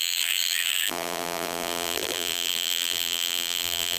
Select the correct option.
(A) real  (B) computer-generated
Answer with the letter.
B